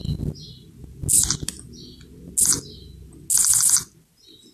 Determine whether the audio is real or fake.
real